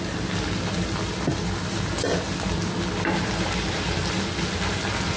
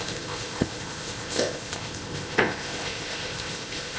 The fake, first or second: second